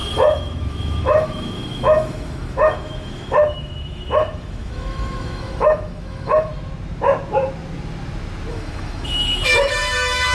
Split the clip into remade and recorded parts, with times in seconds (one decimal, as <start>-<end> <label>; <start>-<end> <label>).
0.0-6.5 remade; 6.5-8.5 recorded; 8.5-10.3 remade